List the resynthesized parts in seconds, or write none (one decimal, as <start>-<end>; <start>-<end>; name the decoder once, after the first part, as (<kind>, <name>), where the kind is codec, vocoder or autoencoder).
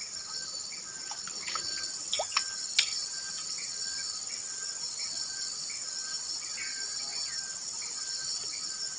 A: none